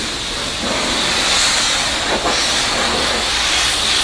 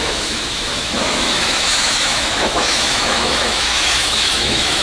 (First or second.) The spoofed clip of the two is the second